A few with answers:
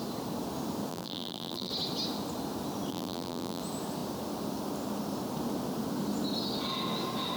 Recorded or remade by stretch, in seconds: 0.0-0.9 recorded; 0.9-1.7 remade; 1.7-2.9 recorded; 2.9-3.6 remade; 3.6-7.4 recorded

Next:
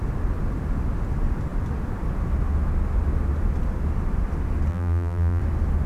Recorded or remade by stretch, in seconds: 0.0-4.7 recorded; 4.7-5.4 remade; 5.4-5.9 recorded

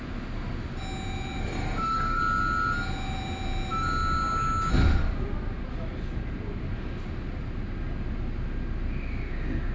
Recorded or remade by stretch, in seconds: 0.0-1.4 recorded; 1.4-2.2 remade; 2.2-9.7 recorded

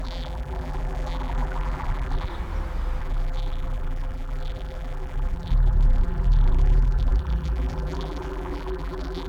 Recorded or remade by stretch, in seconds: 0.0-2.3 remade; 2.3-3.0 recorded; 3.0-9.3 remade

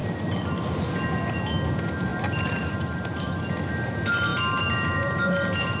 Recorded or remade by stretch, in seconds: 0.0-0.8 remade; 0.8-2.1 recorded; 2.1-3.5 remade; 3.5-4.3 recorded; 4.3-5.8 remade

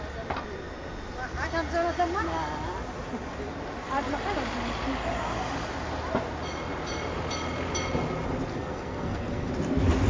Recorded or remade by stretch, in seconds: 0.0-8.5 recorded; 8.5-9.5 remade; 9.5-10.1 recorded

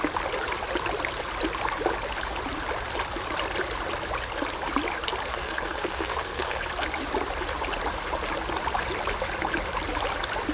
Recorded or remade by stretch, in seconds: 0.0-5.3 recorded; 5.3-6.6 remade; 6.6-10.5 recorded